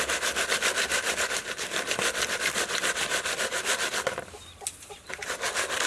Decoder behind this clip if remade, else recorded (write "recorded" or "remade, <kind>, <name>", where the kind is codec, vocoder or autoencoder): recorded